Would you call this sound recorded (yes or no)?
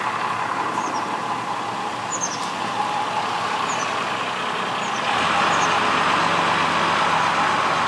yes